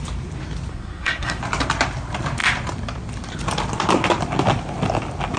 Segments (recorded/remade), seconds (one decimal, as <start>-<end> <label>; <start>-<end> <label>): 0.0-0.7 recorded; 0.7-1.4 remade; 1.4-5.4 recorded